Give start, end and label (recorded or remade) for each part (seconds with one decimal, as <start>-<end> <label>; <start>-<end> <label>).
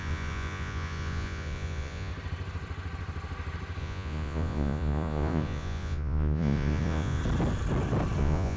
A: 0.0-2.1 remade; 2.1-3.8 recorded; 3.8-7.2 remade; 7.2-8.2 recorded; 8.2-8.6 remade